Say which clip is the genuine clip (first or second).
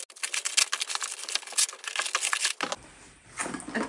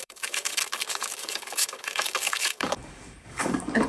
first